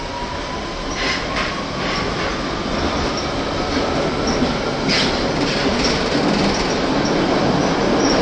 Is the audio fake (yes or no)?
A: no